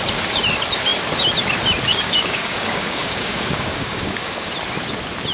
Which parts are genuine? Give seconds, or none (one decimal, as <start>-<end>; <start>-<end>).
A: 0.0-1.9; 4.5-5.3